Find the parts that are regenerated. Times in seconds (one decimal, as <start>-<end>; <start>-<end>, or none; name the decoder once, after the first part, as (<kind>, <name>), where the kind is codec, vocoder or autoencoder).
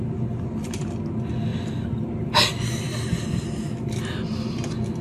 none